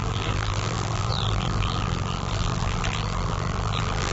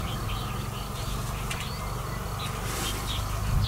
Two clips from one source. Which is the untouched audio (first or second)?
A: second